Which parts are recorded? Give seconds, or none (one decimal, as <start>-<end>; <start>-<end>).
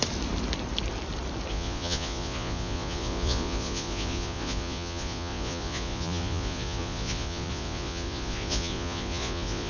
0.0-1.5